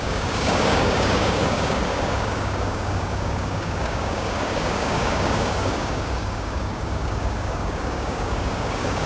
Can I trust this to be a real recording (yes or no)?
no